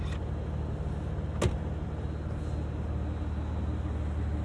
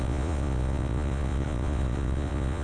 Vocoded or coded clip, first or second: second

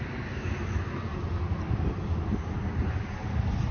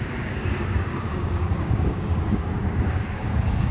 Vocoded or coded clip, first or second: second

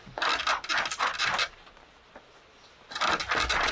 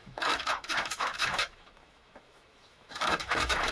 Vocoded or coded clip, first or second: second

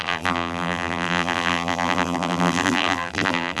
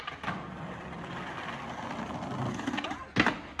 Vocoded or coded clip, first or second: first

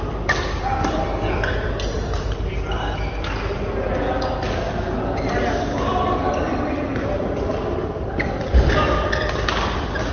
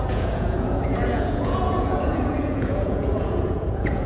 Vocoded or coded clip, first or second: second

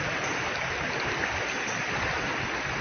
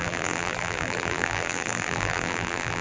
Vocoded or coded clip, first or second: second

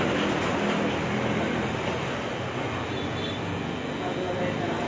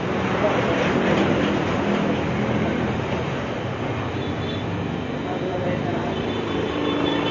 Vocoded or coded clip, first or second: second